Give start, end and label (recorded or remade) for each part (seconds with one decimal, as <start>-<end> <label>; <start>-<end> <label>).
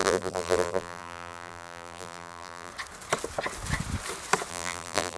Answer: 0.0-2.7 remade; 2.7-4.5 recorded; 4.5-5.2 remade